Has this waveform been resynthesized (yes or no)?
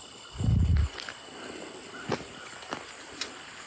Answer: no